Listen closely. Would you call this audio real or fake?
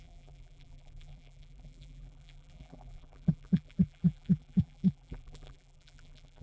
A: fake